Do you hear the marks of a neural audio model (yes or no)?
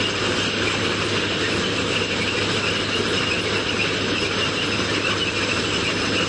no